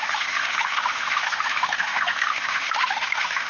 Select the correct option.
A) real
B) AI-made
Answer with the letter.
B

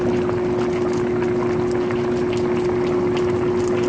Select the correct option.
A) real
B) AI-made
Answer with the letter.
A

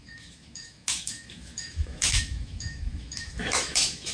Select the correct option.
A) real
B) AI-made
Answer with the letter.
B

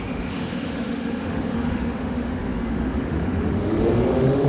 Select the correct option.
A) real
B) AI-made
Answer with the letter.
B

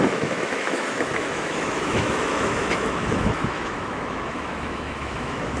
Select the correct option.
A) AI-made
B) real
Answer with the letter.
A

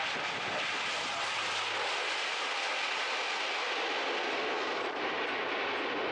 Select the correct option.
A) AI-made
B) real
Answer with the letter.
B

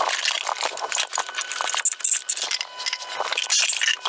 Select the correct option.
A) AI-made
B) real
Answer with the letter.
B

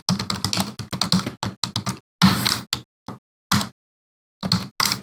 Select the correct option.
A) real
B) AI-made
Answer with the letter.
A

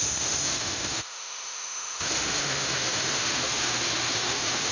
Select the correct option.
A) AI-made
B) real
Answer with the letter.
A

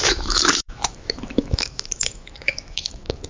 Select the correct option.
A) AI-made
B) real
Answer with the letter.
A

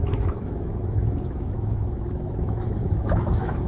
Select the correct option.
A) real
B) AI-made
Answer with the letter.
B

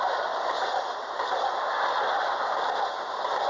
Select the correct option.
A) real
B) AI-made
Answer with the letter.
A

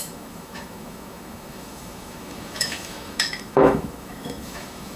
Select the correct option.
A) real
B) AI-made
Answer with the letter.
B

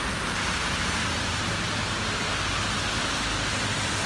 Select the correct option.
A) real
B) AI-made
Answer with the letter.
A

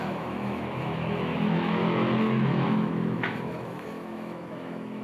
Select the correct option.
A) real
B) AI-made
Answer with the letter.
B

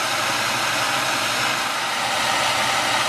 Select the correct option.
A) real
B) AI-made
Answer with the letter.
A